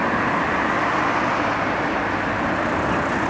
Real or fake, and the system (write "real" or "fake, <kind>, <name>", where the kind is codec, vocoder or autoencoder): real